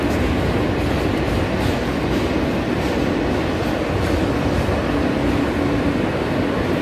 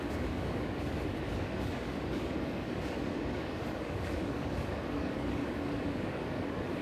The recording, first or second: first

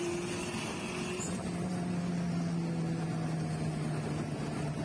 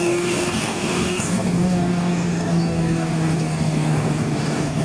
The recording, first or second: first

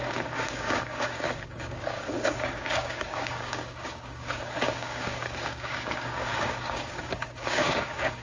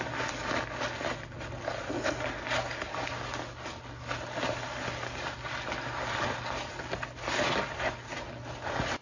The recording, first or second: second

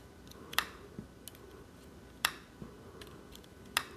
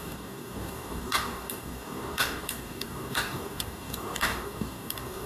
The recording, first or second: first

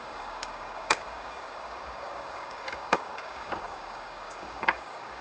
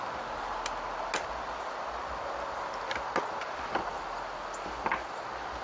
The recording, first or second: second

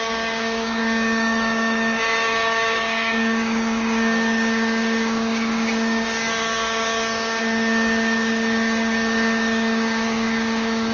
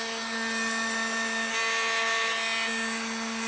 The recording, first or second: second